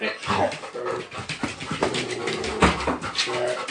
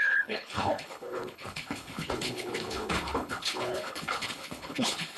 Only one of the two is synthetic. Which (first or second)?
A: second